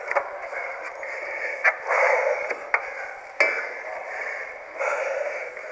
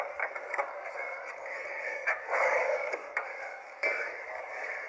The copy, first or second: second